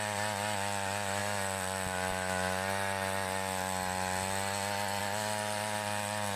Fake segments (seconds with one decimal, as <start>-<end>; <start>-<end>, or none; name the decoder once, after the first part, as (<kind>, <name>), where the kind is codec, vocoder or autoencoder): none

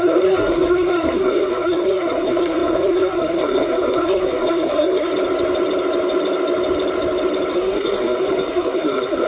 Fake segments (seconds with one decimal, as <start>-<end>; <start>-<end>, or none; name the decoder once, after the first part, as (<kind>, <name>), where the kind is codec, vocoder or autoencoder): 0.0-5.1 (codec, SNAC); 7.5-9.3

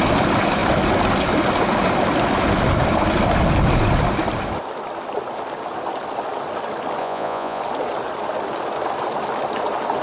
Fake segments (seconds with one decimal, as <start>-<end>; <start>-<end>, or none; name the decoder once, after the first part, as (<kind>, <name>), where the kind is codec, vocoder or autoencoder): 7.0-7.6 (vocoder, Vocos)